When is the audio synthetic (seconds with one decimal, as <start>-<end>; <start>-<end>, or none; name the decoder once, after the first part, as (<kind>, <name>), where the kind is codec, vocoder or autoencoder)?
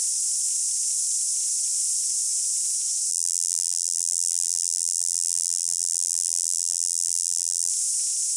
3.1-7.7 (vocoder, BigVGAN v2)